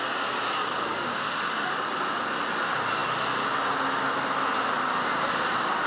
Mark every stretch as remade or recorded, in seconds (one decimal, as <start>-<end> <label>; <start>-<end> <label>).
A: 0.0-0.8 recorded; 0.8-1.7 remade; 1.7-5.9 recorded